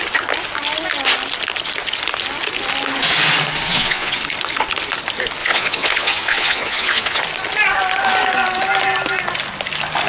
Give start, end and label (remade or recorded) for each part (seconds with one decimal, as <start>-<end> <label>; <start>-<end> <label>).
0.0-3.7 recorded; 3.7-4.2 remade; 4.2-5.4 recorded; 5.4-7.2 remade; 7.2-10.1 recorded